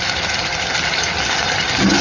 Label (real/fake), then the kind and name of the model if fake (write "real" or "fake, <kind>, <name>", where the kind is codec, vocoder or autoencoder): real